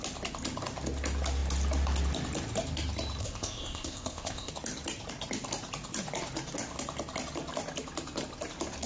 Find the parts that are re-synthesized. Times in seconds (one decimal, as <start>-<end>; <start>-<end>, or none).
3.2-4.5